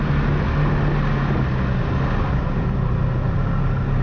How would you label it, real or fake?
real